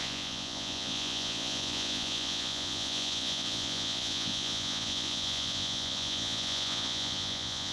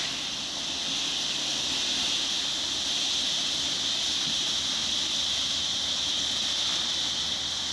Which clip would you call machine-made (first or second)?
first